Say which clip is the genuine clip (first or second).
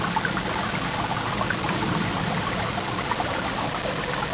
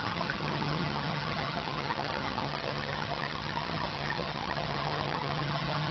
first